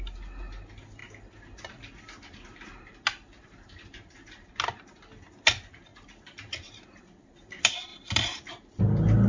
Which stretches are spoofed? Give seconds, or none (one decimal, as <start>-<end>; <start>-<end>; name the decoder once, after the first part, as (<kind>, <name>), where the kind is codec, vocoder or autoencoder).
none